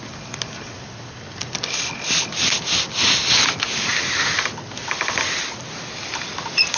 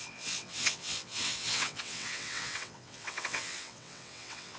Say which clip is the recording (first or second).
first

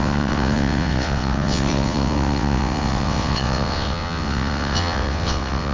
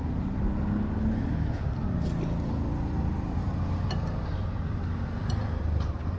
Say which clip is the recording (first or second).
second